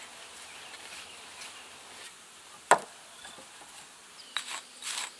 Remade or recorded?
recorded